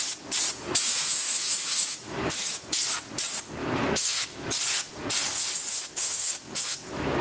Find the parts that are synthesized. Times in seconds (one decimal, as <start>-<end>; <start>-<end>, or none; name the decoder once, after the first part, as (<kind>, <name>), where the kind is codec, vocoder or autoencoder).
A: 0.8-2.7 (autoencoder, DAC-VAE); 3.6-4.5; 5.7-7.2